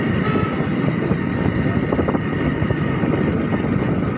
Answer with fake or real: real